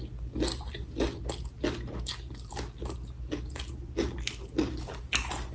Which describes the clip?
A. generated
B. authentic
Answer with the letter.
B